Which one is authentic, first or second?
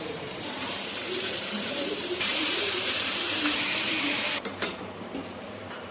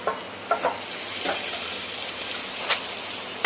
second